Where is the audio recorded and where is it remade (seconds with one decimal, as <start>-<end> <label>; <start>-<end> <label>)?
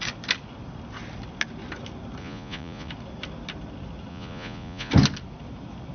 0.0-2.2 recorded; 2.2-2.9 remade; 2.9-4.1 recorded; 4.1-4.9 remade; 4.9-5.9 recorded